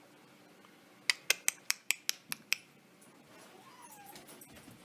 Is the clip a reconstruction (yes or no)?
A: no